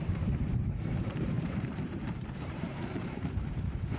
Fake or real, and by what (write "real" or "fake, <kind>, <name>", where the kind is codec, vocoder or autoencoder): fake, vocoder, BigVGAN v2